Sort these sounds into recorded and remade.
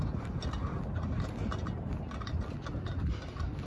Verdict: recorded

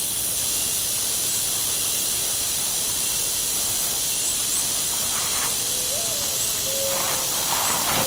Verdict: recorded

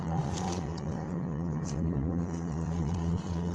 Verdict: remade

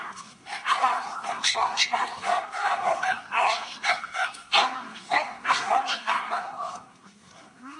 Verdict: remade